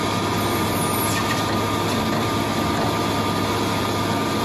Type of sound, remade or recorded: recorded